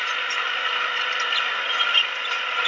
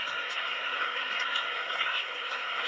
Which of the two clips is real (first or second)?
first